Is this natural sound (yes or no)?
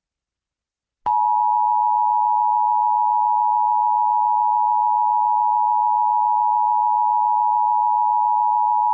yes